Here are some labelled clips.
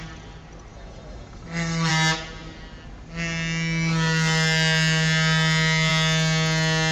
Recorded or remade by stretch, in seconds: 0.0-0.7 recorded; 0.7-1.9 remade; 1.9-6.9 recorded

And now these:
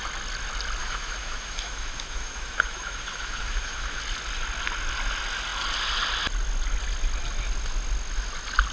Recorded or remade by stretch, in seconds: 0.0-0.8 recorded; 0.8-4.0 remade; 4.0-8.7 recorded

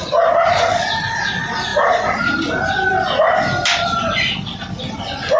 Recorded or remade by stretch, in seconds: 0.0-5.4 recorded

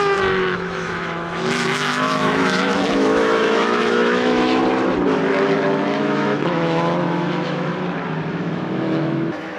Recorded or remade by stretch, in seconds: 0.0-4.6 remade; 4.6-5.8 recorded; 5.8-7.7 remade; 7.7-8.3 recorded; 8.3-9.6 remade